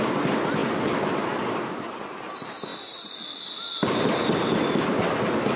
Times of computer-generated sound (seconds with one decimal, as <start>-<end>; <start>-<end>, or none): none